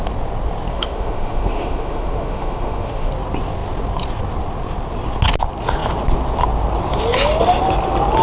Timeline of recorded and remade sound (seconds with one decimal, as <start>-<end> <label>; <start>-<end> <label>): 0.0-0.7 recorded; 0.7-3.1 remade; 3.1-8.2 recorded